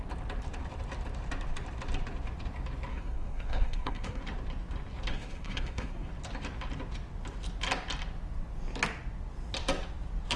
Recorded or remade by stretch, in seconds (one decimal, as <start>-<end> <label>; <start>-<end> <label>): 0.0-2.9 recorded; 2.9-4.2 remade; 4.2-5.1 recorded; 5.1-6.1 remade; 6.1-10.4 recorded